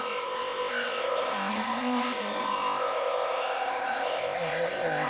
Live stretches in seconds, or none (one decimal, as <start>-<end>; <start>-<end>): none